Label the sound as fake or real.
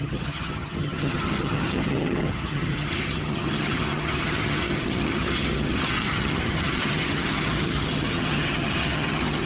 fake